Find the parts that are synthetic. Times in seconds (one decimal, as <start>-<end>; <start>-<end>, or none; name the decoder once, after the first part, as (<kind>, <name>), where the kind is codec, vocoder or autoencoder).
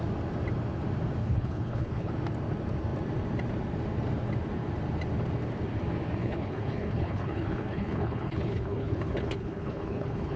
1.2-2.1 (codec, HILCodec); 6.2-10.4